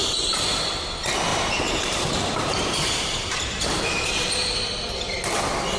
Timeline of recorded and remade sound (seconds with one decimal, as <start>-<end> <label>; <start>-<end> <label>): 0.0-0.7 remade; 0.7-1.3 recorded; 1.3-3.4 remade; 3.4-5.8 recorded